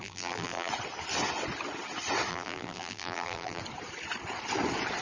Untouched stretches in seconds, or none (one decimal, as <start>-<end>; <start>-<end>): 0.7-2.3; 3.6-5.0